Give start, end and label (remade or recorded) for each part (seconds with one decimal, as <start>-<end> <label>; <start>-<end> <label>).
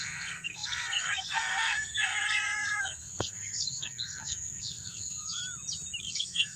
0.0-5.4 remade; 5.4-6.0 recorded; 6.0-6.6 remade